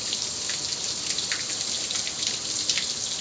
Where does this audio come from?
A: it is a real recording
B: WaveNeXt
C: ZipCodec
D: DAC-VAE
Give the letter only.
A